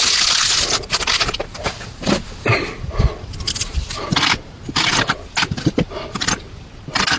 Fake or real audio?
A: real